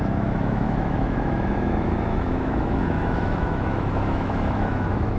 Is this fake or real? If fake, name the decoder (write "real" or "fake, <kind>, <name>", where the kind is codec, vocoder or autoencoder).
fake, autoencoder, DAC-VAE